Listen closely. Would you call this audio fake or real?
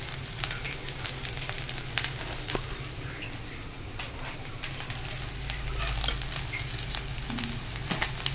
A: real